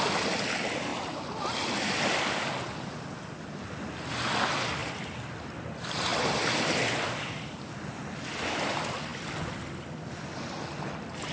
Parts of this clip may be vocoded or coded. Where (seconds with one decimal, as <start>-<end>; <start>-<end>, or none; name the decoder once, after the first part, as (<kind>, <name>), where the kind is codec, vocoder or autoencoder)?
4.8-5.3 (vocoder, BigVGAN v2); 6.1-7.4